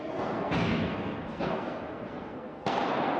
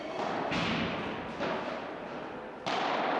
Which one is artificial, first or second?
first